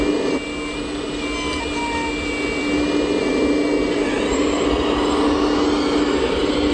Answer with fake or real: real